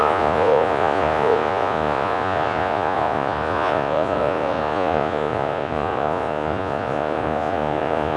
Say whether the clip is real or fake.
fake